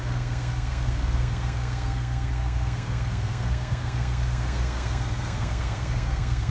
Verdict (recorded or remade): remade